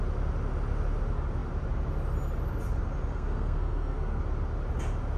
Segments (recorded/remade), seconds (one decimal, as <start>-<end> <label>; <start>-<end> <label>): 0.0-3.1 recorded; 3.1-4.2 remade; 4.2-5.2 recorded